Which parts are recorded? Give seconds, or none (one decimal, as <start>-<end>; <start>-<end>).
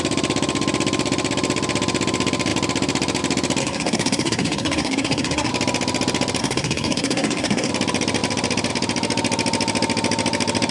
0.0-3.6; 5.5-6.4; 7.7-10.7